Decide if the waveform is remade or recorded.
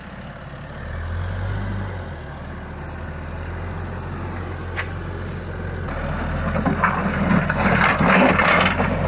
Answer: recorded